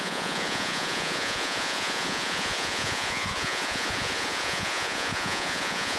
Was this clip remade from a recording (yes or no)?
yes